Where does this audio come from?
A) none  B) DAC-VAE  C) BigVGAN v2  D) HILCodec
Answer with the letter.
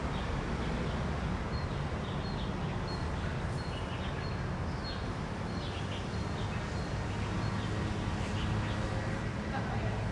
A